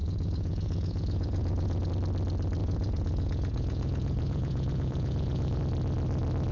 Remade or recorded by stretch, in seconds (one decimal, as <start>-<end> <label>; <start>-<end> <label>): 0.0-1.9 remade; 1.9-2.6 recorded; 2.6-5.6 remade; 5.6-6.5 recorded